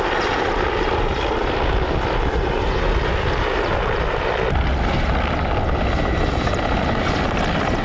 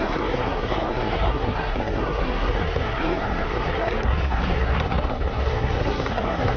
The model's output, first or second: second